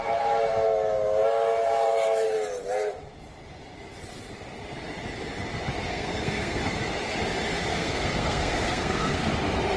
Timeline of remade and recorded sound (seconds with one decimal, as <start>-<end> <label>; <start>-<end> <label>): 0.0-5.9 recorded; 5.9-6.6 remade; 6.6-7.7 recorded; 7.7-9.3 remade; 9.3-9.8 recorded